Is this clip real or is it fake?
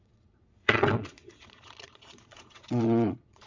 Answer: fake